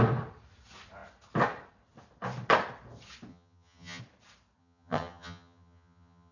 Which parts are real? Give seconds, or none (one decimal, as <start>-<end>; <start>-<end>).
0.0-3.3; 4.0-4.6